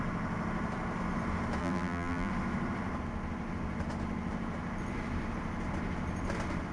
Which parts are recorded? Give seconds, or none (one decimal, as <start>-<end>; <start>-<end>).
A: 0.0-1.6; 2.3-6.7